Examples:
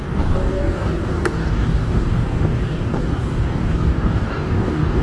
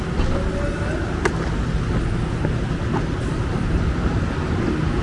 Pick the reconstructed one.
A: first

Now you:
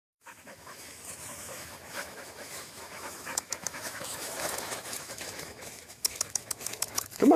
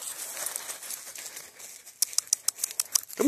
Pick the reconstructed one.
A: first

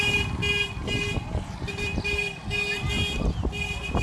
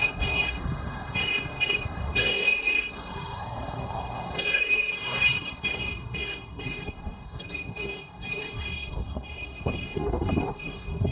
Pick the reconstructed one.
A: second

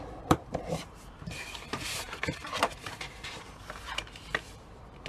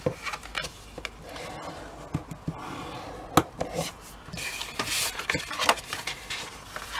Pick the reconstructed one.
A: first